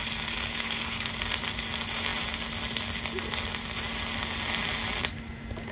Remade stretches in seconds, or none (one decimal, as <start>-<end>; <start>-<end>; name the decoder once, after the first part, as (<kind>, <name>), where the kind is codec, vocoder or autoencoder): 0.5-1.1 (codec, SNAC)